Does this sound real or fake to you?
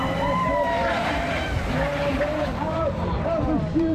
fake